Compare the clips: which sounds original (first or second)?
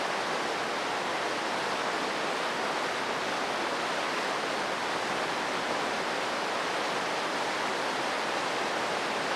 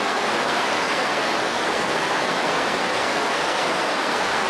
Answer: first